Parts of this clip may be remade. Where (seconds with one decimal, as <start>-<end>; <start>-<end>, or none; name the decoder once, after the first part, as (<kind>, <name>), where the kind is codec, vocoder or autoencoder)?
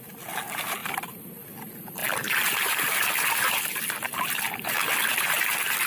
0.8-1.3 (vocoder, BigVGAN v2); 2.0-2.7